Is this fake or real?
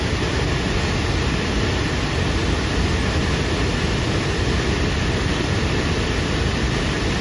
real